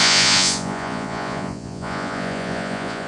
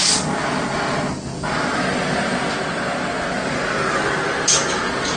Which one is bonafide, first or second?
second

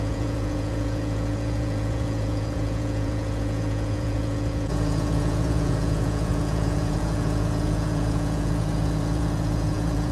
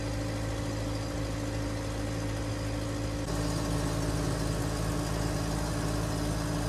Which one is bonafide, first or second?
second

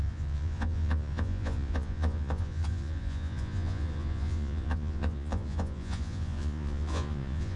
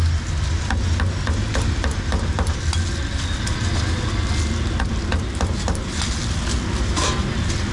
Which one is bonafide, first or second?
second